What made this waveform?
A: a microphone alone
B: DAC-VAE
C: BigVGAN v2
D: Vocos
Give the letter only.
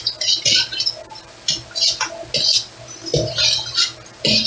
A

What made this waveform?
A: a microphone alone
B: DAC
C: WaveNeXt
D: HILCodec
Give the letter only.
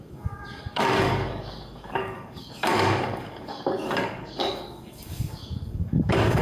B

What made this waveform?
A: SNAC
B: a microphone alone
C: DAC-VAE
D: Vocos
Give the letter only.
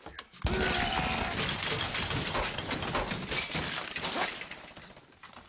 B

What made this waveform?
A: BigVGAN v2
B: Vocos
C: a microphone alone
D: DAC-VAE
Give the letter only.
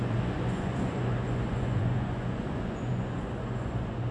B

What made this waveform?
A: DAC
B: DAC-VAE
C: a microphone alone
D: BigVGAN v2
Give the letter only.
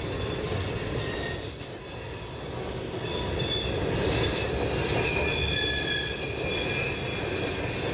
C